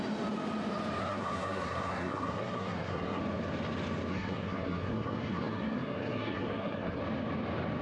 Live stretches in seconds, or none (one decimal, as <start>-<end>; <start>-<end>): 0.0-1.0; 3.2-4.1; 7.0-7.8

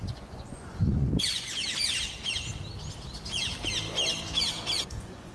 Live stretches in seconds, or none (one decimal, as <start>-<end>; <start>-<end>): 1.6-4.8

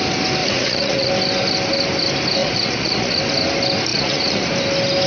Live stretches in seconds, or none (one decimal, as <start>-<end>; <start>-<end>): 0.0-0.4; 1.1-2.4; 3.2-3.9; 4.5-5.1

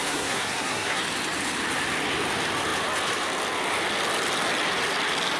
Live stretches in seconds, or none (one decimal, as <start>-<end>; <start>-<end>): 1.0-5.4